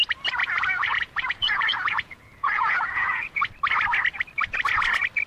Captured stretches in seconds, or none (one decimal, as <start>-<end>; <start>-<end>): 0.0-0.4; 3.5-5.3